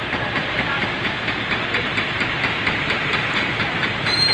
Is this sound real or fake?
fake